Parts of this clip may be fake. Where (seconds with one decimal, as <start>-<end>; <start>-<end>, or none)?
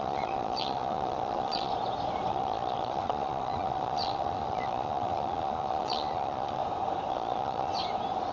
0.0-1.7; 2.3-6.6; 7.1-7.7